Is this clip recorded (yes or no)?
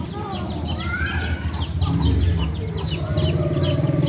yes